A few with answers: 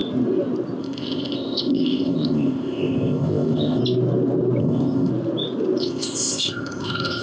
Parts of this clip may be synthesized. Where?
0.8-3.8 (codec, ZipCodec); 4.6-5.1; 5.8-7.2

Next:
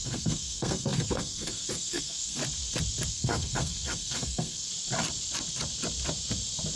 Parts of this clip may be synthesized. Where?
0.0-2.4 (codec, SNAC); 3.1-4.7

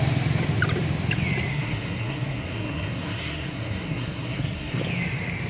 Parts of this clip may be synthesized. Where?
1.5-4.8 (codec, SNAC)

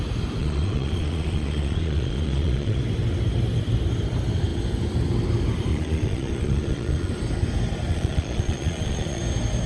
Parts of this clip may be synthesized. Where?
0.4-2.8 (vocoder, Vocos); 5.7-7.1; 7.9-9.2